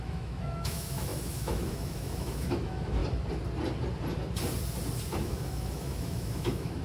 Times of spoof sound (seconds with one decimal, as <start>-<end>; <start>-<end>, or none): 0.0-3.0; 5.2-6.8